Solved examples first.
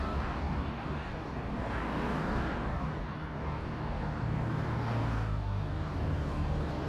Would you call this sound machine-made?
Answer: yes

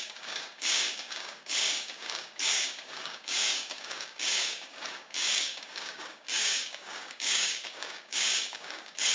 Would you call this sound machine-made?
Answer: yes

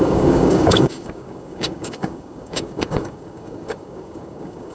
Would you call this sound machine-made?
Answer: yes